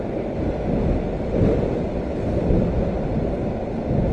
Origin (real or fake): real